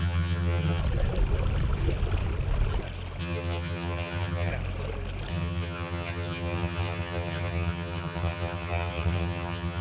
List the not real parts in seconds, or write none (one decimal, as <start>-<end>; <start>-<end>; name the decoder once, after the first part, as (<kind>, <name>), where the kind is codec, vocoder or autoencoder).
0.0-0.8 (vocoder, HiFi-GAN); 3.2-4.5; 5.3-9.8